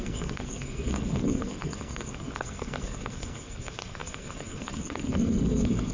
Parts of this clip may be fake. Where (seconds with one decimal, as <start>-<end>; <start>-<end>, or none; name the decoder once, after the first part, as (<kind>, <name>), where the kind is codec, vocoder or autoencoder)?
0.0-5.9 (codec, SNAC)